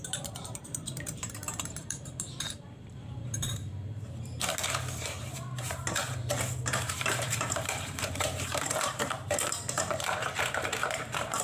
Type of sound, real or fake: fake